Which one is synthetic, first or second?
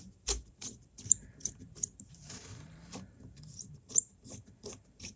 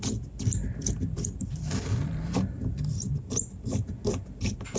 first